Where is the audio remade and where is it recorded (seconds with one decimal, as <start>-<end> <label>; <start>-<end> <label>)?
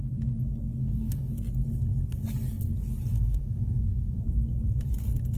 0.0-0.8 recorded; 0.8-1.3 remade; 1.3-3.1 recorded; 3.1-4.2 remade; 4.2-5.4 recorded